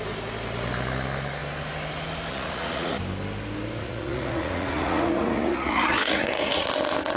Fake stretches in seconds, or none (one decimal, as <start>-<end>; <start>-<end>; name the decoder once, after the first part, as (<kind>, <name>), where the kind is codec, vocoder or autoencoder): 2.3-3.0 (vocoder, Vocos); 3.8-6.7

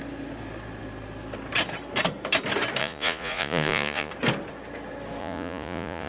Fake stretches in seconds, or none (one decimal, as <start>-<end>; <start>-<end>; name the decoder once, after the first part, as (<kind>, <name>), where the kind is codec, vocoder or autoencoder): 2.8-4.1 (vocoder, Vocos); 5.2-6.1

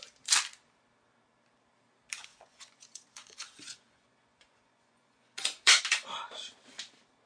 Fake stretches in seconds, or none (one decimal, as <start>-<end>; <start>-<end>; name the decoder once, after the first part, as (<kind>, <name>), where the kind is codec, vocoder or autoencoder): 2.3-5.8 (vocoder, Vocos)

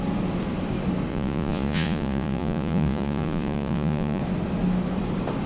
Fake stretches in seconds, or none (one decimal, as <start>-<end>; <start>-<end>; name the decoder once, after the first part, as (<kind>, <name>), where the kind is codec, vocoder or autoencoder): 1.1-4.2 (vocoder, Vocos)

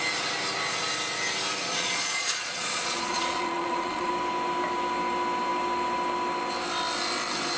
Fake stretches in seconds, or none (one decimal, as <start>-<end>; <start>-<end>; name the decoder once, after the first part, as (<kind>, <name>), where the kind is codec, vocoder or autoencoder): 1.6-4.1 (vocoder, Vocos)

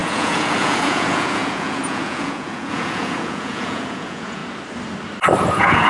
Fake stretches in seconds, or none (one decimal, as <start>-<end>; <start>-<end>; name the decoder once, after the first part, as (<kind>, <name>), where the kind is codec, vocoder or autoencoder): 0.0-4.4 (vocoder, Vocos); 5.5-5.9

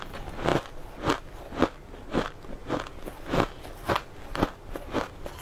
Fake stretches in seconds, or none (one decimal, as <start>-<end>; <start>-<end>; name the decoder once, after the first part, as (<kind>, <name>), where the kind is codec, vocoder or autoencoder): none

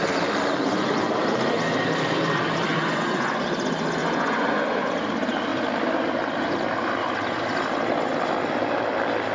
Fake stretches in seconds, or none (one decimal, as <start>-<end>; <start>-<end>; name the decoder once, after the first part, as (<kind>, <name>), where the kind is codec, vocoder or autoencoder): 2.7-3.4 (vocoder, Vocos); 4.0-4.9